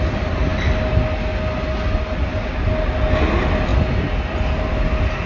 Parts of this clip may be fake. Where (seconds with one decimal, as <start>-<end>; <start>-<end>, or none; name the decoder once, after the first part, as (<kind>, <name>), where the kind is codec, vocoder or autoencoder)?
none